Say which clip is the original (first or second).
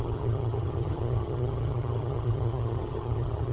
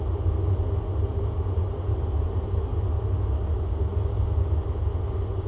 second